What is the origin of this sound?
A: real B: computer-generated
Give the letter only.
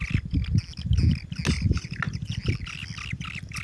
A